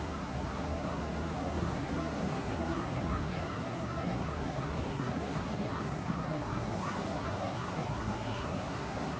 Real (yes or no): no